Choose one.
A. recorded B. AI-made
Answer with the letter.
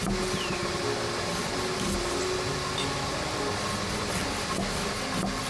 A